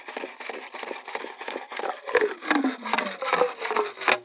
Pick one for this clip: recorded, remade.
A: recorded